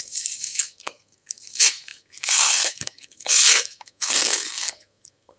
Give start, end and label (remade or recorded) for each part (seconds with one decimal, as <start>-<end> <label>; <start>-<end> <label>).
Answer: 0.0-5.4 remade